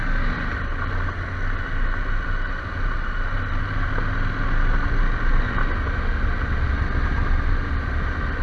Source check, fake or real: real